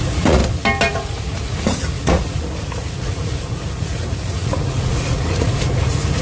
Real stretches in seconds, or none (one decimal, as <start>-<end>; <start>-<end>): 0.4-0.9